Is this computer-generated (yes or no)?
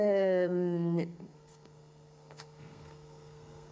yes